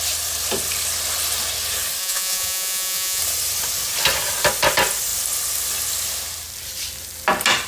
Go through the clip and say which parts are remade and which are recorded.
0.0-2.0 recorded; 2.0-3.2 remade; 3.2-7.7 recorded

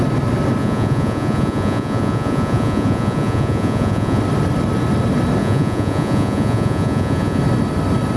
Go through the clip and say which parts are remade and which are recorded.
0.0-0.6 recorded; 0.6-4.2 remade; 4.2-5.4 recorded; 5.4-7.4 remade; 7.4-8.2 recorded

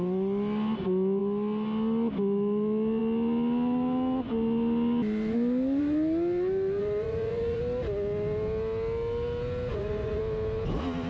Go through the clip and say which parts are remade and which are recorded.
0.0-6.8 recorded; 6.8-7.6 remade; 7.6-9.7 recorded; 9.7-10.2 remade; 10.2-11.1 recorded

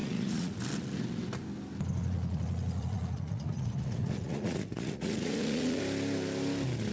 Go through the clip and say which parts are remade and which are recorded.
0.0-0.6 remade; 0.6-2.0 recorded; 2.0-5.8 remade; 5.8-6.9 recorded

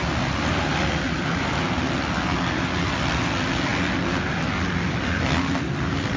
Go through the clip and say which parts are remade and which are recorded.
0.0-6.2 recorded

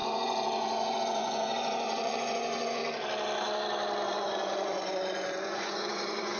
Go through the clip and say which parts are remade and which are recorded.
0.0-2.8 remade; 2.8-4.1 recorded; 4.1-6.4 remade

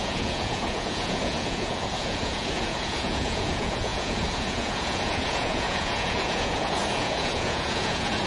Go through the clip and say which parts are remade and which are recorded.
0.0-8.3 remade

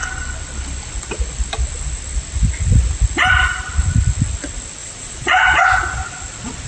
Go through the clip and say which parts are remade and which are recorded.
0.0-4.8 recorded; 4.8-5.7 remade; 5.7-6.7 recorded